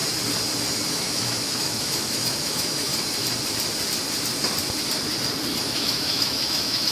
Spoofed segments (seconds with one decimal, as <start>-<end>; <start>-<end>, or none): 0.9-2.9; 5.6-6.9